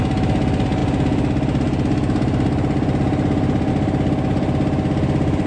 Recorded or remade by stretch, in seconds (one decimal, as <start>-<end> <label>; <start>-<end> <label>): 0.0-5.5 recorded